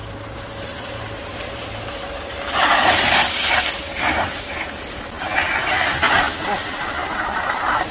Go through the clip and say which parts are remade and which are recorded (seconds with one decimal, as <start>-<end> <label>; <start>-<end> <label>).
0.0-3.3 remade; 3.3-3.9 recorded; 3.9-5.0 remade; 5.0-7.9 recorded